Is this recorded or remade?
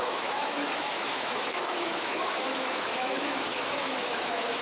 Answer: remade